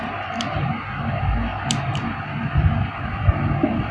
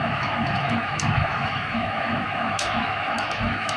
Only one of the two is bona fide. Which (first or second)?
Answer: first